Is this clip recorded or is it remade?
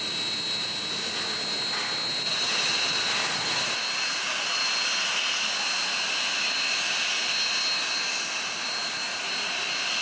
recorded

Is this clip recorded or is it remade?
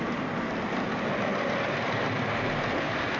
recorded